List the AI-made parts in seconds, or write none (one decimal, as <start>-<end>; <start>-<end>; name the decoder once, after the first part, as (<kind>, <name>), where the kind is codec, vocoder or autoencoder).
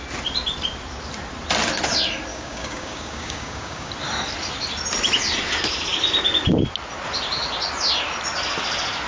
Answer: 2.3-3.9 (codec, DAC)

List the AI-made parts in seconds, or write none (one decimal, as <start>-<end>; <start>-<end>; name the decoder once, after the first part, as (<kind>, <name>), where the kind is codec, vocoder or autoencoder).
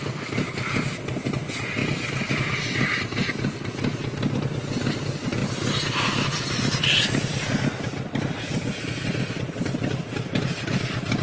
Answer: none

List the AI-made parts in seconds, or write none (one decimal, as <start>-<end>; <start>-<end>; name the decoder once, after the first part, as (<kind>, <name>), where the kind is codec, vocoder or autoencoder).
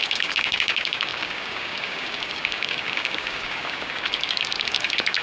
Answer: 0.0-5.2 (codec, DAC)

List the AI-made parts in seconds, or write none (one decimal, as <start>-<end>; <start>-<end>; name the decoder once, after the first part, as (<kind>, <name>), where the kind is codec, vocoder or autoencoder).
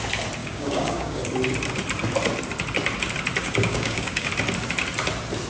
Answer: 0.4-1.2 (codec, DAC); 3.4-4.3